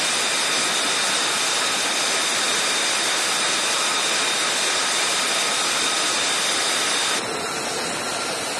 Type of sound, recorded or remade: recorded